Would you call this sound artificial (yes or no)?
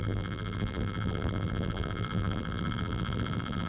yes